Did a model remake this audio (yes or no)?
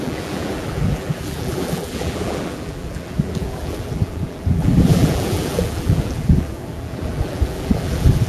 yes